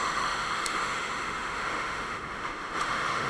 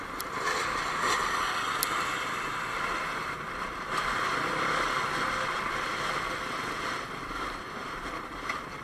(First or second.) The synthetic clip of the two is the first